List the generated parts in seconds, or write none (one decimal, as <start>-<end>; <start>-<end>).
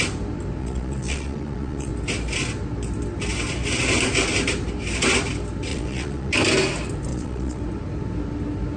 0.6-1.9; 5.7-6.3; 7.1-7.6